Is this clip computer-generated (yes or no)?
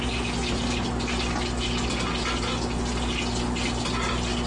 no